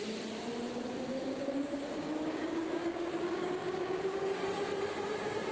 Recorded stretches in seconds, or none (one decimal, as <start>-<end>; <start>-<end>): 0.0-1.1; 4.4-5.5